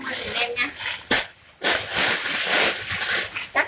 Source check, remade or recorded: recorded